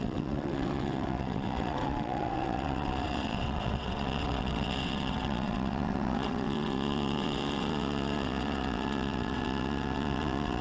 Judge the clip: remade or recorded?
remade